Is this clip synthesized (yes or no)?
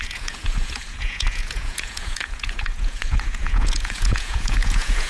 yes